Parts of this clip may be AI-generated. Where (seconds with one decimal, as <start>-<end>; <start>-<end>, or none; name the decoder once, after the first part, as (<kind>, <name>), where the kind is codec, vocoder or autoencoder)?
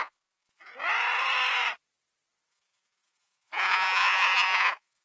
0.0-0.7 (vocoder, Vocos); 2.5-5.0